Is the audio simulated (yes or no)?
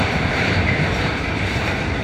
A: yes